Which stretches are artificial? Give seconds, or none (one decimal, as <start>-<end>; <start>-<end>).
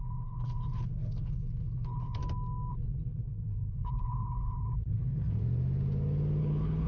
0.0-2.2; 2.7-5.4; 6.4-6.9